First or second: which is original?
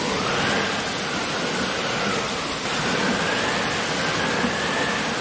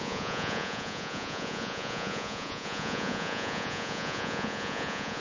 first